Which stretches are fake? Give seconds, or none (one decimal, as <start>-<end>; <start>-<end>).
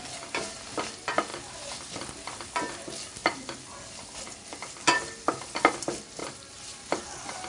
6.2-7.1